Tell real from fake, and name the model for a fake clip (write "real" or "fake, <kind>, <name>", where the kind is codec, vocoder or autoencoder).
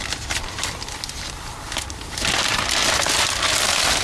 real